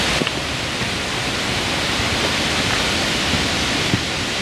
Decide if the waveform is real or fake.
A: real